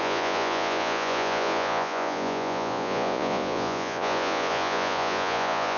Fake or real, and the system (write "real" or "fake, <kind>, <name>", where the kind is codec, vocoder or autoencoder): fake, vocoder, Vocos